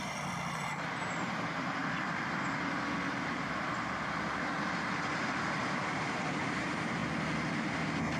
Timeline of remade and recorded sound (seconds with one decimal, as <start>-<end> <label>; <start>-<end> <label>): 0.0-7.0 remade; 7.0-8.2 recorded